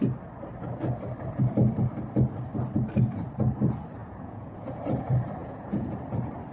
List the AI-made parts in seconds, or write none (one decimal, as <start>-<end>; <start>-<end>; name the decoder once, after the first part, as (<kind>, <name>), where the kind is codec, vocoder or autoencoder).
4.0-4.7 (vocoder, Vocos); 5.4-5.9